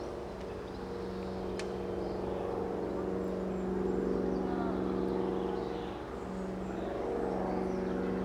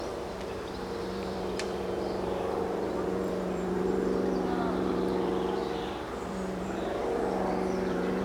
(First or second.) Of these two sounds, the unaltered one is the first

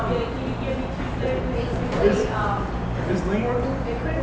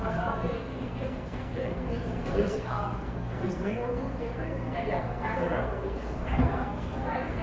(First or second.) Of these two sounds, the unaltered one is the first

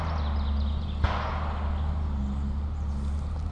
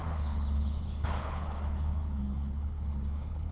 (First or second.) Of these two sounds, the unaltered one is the first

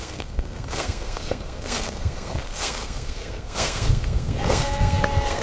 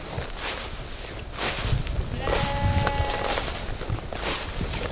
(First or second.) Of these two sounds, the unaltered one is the second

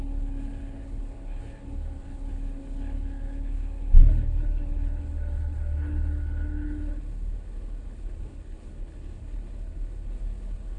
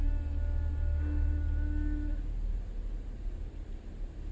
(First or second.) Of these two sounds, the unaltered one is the second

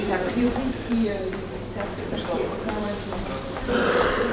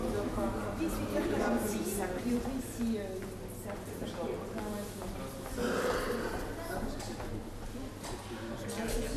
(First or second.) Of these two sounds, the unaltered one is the second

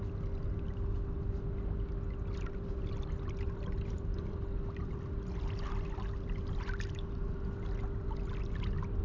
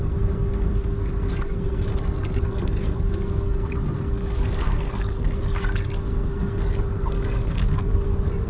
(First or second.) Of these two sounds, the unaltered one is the first